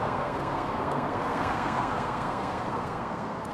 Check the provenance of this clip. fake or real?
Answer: fake